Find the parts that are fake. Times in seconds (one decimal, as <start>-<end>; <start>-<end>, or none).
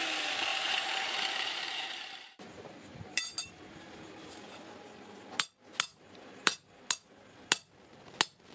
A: 0.5-4.6; 5.9-6.9